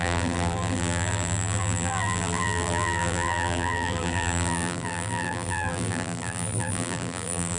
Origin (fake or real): fake